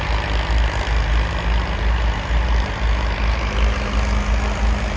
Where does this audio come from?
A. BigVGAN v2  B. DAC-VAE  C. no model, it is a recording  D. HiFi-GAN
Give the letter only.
C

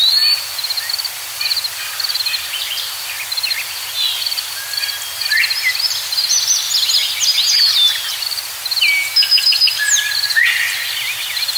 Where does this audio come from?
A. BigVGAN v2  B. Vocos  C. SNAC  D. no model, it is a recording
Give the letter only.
D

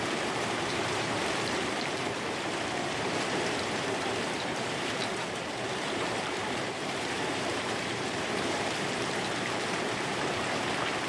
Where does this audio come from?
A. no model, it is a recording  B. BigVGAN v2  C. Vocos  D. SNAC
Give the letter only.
B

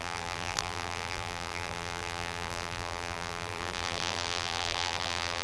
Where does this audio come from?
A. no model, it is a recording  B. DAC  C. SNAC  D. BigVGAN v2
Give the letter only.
D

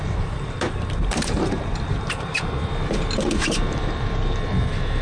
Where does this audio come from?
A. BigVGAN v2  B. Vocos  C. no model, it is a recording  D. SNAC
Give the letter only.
A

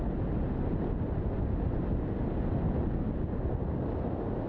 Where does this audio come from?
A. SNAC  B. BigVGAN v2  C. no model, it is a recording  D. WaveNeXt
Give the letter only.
C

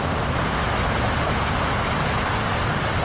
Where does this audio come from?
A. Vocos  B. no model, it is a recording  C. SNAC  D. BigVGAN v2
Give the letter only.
B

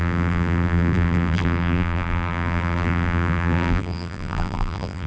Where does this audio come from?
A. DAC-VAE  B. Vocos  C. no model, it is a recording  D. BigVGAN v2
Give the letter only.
D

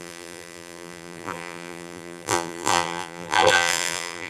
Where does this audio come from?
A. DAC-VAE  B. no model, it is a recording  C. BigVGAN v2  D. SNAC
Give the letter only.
C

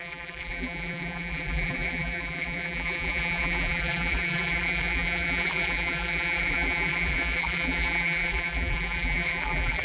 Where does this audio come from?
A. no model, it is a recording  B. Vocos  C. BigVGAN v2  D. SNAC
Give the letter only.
C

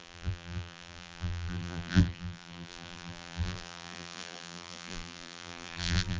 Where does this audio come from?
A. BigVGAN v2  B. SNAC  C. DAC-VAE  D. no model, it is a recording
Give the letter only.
A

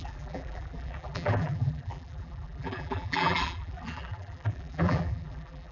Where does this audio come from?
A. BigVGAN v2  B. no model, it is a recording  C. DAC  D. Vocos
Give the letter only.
A